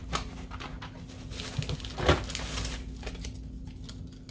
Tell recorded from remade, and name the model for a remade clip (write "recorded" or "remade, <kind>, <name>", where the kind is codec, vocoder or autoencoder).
recorded